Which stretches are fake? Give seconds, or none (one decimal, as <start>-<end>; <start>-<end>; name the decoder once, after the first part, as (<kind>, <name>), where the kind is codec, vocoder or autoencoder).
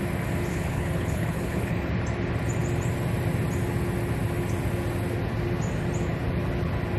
0.5-1.9 (codec, HILCodec)